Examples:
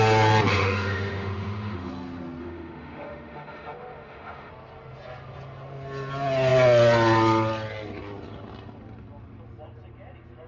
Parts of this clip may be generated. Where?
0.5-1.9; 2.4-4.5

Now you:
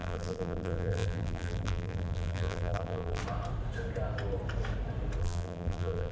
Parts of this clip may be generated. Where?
0.0-3.2; 5.2-6.1

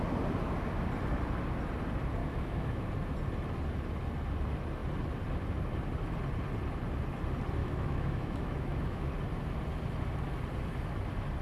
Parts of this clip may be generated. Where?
2.2-2.9; 7.6-9.1

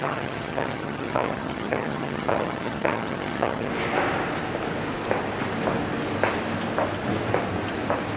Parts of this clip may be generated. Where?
0.0-3.7

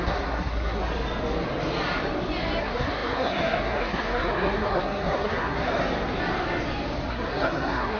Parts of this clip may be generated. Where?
0.0-0.8; 2.6-5.7; 7.1-8.0

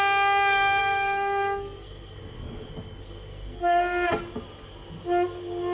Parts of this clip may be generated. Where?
0.8-4.2